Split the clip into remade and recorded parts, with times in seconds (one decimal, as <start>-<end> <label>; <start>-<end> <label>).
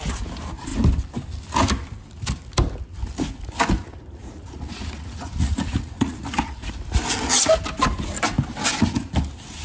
0.0-4.2 recorded; 4.2-6.7 remade; 6.7-9.6 recorded